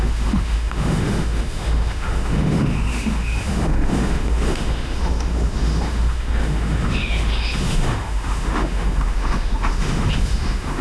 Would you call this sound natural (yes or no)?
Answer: no